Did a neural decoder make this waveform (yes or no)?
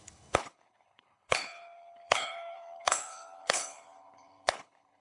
yes